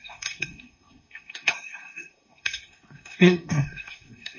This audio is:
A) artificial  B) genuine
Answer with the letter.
A